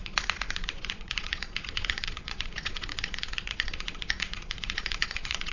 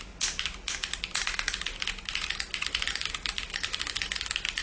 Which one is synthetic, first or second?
first